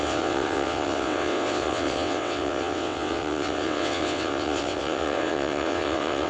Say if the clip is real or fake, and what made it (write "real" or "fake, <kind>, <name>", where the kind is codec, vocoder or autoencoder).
fake, vocoder, WaveNeXt